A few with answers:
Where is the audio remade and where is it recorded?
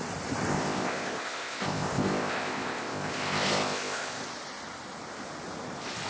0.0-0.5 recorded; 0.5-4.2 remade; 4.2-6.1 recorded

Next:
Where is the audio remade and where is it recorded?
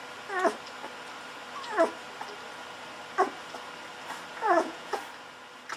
0.0-4.3 recorded; 4.3-5.0 remade; 5.0-5.8 recorded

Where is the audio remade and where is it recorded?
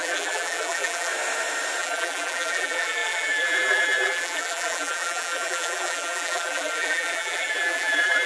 0.0-1.1 remade; 1.1-1.8 recorded; 1.8-8.3 remade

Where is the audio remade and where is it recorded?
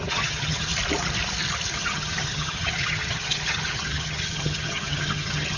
0.0-0.7 remade; 0.7-1.8 recorded; 1.8-5.6 remade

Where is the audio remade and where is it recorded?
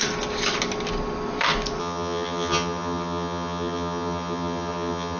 0.0-1.8 recorded; 1.8-5.2 remade